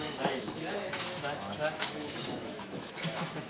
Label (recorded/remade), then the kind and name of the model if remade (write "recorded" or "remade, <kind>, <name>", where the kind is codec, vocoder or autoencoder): remade, autoencoder, DAC-VAE